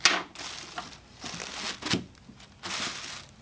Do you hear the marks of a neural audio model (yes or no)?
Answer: no